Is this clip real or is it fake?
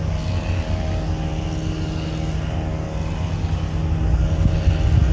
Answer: real